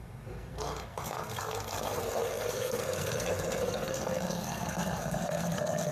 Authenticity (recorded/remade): remade